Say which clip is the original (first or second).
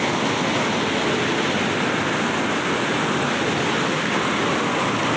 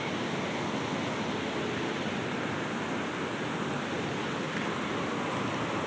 second